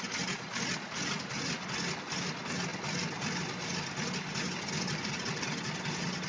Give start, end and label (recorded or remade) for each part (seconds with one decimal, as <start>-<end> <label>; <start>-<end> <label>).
0.0-6.3 recorded